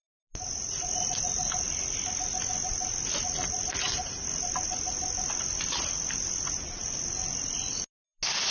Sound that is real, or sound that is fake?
real